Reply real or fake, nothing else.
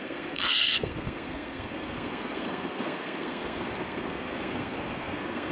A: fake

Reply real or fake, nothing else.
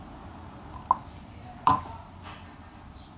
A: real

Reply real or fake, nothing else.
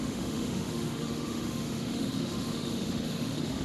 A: fake